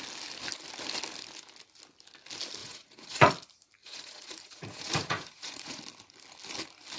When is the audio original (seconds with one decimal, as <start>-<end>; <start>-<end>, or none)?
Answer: 0.0-2.6; 3.3-3.8; 5.8-7.0